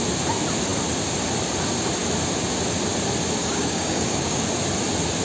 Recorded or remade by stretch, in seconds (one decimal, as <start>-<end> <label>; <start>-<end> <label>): 0.0-3.4 recorded; 3.4-4.4 remade; 4.4-5.2 recorded